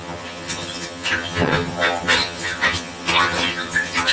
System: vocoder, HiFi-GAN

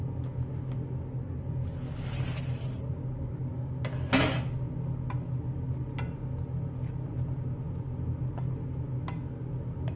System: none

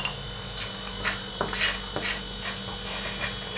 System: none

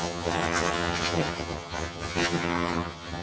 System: vocoder, HiFi-GAN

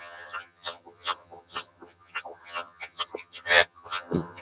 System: vocoder, HiFi-GAN